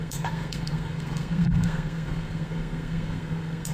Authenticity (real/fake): fake